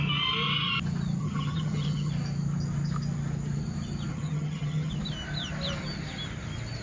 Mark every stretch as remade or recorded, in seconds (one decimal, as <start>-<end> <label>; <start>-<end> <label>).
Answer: 0.0-1.2 recorded; 1.2-2.1 remade; 2.1-4.1 recorded; 4.1-4.9 remade; 4.9-6.8 recorded